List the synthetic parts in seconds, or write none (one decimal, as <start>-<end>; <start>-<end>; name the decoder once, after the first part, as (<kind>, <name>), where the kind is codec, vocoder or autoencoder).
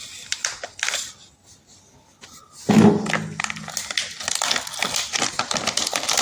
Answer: 0.5-1.1 (vocoder, BigVGAN v2); 4.8-5.6